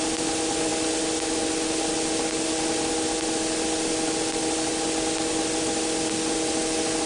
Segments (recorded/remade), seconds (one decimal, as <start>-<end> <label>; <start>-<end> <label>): 0.0-7.1 recorded